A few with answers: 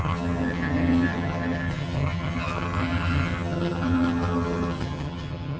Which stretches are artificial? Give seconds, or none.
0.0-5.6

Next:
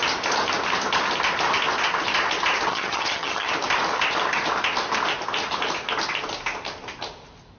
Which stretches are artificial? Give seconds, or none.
2.7-3.5

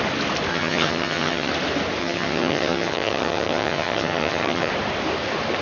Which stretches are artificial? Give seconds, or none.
0.5-1.5; 2.0-4.7

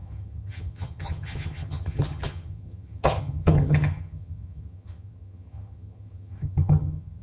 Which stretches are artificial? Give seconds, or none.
0.0-7.2

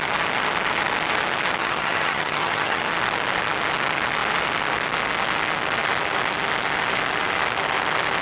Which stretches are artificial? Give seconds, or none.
1.6-2.8

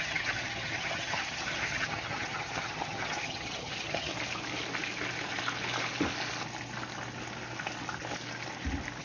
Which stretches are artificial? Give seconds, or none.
0.0-4.1

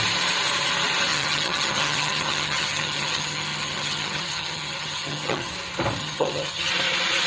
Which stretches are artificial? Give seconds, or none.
1.1-5.5; 6.0-6.7

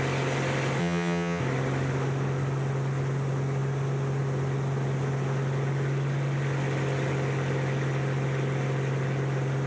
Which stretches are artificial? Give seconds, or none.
0.8-1.4